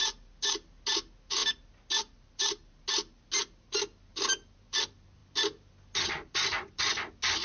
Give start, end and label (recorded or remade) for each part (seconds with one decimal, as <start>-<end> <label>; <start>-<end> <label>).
0.0-7.4 recorded